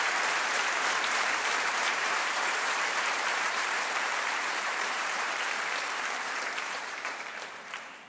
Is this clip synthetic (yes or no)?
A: yes